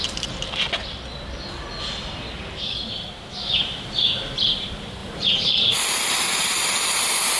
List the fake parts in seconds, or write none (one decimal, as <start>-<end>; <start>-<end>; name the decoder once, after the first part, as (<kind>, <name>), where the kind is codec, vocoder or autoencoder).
5.0-5.9 (vocoder, BigVGAN v2)